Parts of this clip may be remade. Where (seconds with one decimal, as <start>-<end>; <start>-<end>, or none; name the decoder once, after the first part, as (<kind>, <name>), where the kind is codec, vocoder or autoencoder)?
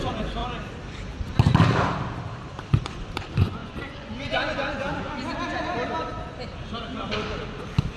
0.0-0.4 (vocoder, Vocos); 2.5-5.2